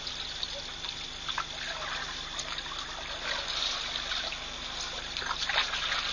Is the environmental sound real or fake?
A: real